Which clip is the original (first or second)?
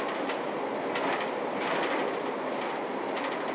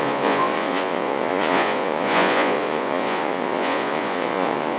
first